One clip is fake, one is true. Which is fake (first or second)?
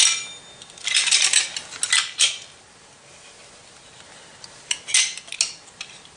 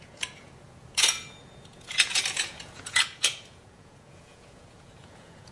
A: second